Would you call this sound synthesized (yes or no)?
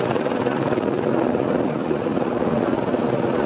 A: yes